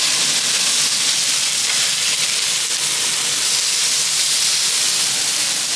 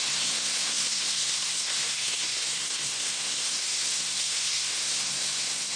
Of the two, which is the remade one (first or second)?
second